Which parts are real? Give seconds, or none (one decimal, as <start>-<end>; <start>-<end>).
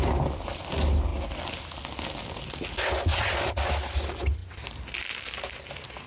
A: 0.0-6.1